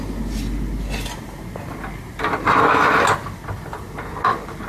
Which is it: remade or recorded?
recorded